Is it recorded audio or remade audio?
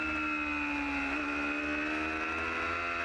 recorded